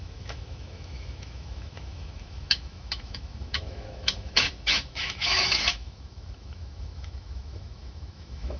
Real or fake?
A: fake